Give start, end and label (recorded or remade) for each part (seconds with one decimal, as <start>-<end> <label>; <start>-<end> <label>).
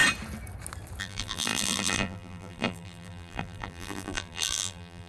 0.0-1.0 recorded; 1.0-5.1 remade